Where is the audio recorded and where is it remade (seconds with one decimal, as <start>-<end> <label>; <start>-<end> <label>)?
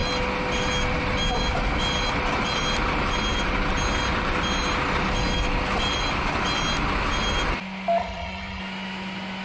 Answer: 0.0-8.0 recorded; 8.0-8.6 remade; 8.6-9.4 recorded